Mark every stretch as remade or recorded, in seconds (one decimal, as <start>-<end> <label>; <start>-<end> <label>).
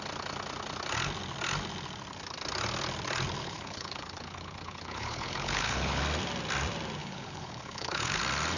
0.0-3.4 recorded; 3.4-6.0 remade; 6.0-7.0 recorded; 7.0-8.2 remade; 8.2-8.6 recorded